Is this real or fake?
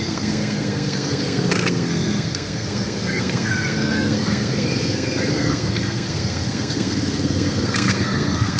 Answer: fake